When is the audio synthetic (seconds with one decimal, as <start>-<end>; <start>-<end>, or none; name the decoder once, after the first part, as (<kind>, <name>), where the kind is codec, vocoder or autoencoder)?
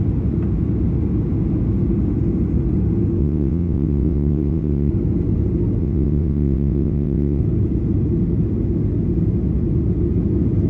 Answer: 3.2-4.9 (vocoder, WaveNeXt); 5.8-7.4